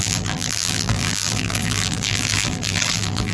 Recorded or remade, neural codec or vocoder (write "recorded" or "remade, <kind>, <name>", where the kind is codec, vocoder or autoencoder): remade, vocoder, BigVGAN v2